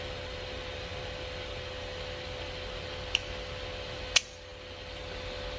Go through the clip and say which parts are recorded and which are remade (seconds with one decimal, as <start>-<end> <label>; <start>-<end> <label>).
0.0-5.6 recorded